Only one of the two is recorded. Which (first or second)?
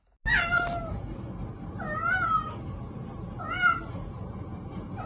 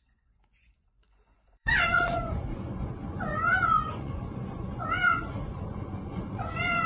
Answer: first